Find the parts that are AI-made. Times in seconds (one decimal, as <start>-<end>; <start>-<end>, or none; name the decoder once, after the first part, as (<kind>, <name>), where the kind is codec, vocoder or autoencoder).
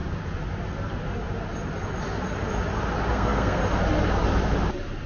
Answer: 3.1-3.6 (codec, SNAC)